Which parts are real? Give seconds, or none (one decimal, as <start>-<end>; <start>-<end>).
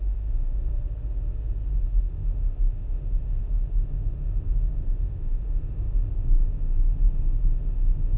0.7-2.0